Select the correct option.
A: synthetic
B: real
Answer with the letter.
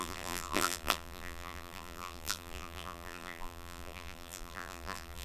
A